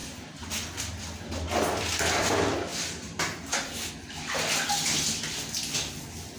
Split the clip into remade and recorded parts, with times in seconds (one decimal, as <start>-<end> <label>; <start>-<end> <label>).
0.0-2.7 recorded; 2.7-3.9 remade; 3.9-6.4 recorded